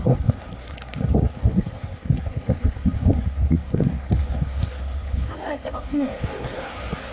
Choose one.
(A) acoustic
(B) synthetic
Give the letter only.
B